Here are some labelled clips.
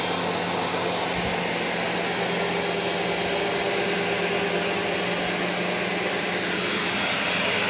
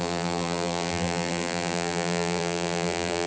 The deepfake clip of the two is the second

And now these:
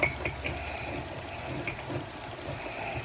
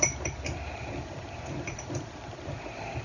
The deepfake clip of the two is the second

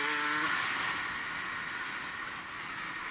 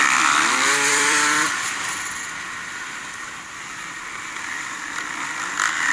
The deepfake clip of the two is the second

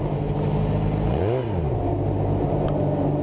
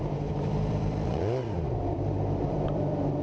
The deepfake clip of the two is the second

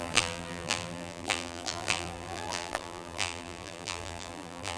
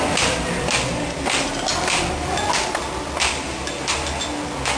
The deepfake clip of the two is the first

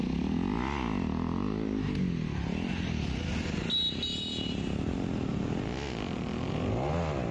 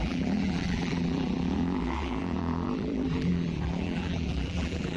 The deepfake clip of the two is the second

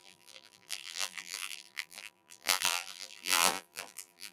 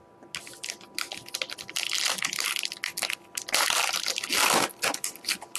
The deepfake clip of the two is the first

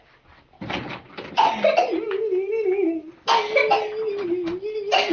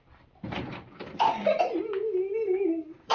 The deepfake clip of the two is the second